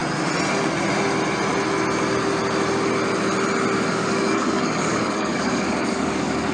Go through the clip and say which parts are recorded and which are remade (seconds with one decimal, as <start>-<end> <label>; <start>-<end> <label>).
0.0-3.9 recorded; 3.9-6.5 remade